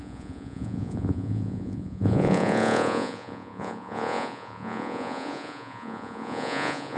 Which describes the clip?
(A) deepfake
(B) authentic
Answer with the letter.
A